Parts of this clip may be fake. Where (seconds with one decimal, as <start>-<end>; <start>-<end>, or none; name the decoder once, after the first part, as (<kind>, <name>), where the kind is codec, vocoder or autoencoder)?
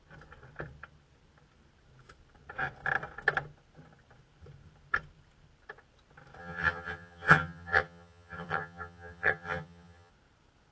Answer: 6.4-10.1 (vocoder, HiFi-GAN)